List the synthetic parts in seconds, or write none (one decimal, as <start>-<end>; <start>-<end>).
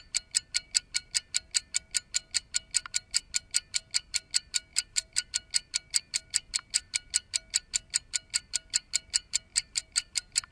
4.7-5.3; 9.5-10.5